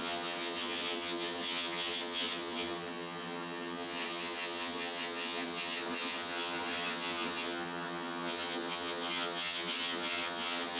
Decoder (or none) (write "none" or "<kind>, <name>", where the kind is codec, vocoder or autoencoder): vocoder, HiFi-GAN